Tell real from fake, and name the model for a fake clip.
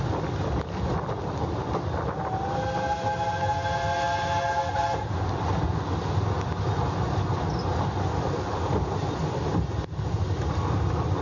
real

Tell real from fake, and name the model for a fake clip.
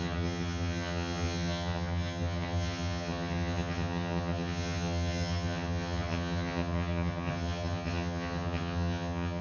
fake, vocoder, HiFi-GAN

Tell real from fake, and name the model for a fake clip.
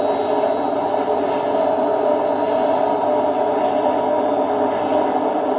real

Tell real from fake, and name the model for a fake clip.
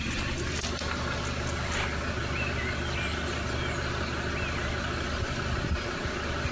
real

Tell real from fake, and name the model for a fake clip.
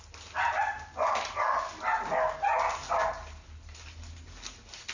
real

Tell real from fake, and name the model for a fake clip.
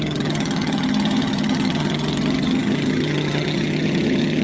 fake, vocoder, HiFi-GAN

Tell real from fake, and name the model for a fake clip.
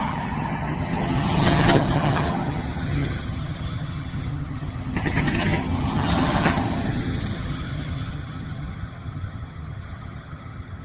fake, vocoder, HiFi-GAN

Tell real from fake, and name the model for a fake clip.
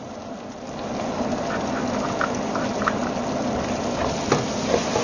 real